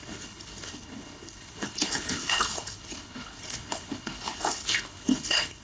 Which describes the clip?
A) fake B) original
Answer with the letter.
A